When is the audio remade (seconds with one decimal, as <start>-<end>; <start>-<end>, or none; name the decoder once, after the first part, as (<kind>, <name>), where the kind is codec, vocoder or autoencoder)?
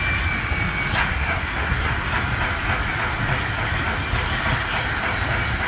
1.0-1.9 (codec, SNAC)